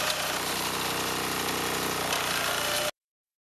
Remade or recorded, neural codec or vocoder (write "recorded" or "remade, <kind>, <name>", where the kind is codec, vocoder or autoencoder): recorded